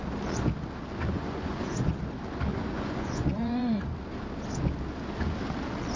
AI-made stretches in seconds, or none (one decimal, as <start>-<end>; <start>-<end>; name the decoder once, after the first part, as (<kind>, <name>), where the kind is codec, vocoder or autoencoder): 1.1-2.0 (vocoder, Vocos); 2.5-3.8